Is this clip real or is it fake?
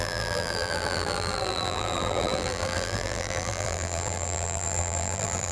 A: fake